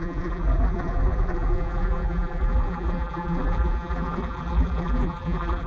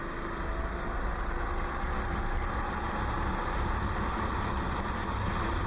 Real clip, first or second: second